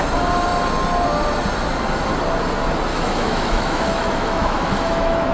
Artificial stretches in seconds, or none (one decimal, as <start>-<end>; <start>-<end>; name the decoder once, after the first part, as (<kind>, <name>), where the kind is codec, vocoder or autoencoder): 2.9-5.3 (autoencoder, DAC-VAE)